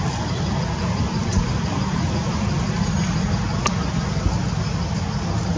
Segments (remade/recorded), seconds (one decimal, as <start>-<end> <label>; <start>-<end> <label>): 0.0-5.6 recorded